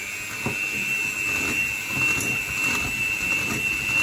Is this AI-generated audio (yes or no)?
no